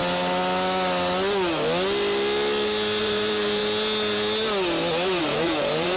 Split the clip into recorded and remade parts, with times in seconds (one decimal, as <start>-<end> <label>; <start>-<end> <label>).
0.0-3.0 recorded; 3.0-3.6 remade; 3.6-5.2 recorded; 5.2-6.0 remade